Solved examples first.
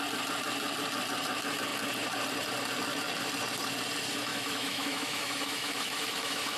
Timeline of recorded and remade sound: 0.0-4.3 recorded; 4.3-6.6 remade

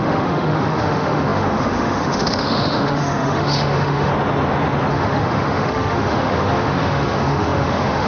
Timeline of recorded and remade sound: 0.0-4.1 remade; 4.1-4.9 recorded; 4.9-8.1 remade

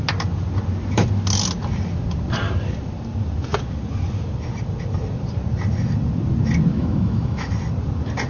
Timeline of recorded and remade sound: 0.0-6.7 recorded; 6.7-7.5 remade; 7.5-8.3 recorded

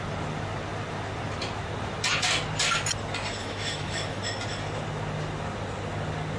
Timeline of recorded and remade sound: 0.0-3.4 recorded; 3.4-4.2 remade; 4.2-6.4 recorded

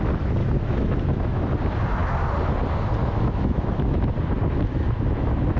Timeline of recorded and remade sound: 0.0-0.4 recorded; 0.4-1.4 remade; 1.4-3.0 recorded; 3.0-4.0 remade; 4.0-4.7 recorded; 4.7-5.6 remade

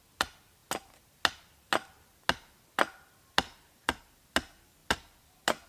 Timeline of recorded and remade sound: 0.0-5.7 recorded